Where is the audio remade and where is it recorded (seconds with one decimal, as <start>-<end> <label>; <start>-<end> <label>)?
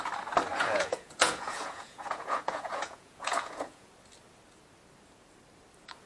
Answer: 0.0-0.5 recorded; 0.5-3.9 remade; 3.9-6.1 recorded